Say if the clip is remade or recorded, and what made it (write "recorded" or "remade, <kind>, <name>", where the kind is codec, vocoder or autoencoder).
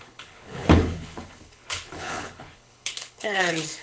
remade, codec, HILCodec